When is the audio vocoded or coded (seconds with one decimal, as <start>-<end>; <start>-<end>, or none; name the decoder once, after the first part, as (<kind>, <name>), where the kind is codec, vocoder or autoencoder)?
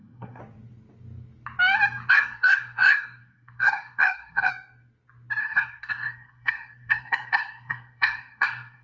0.0-0.4 (codec, SNAC); 2.1-4.5; 5.4-8.8